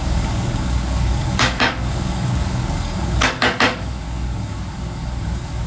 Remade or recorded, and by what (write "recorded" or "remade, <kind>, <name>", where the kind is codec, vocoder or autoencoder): remade, codec, DAC